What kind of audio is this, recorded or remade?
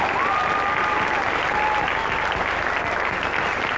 recorded